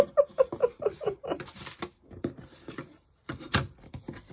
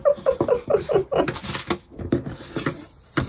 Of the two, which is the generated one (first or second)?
first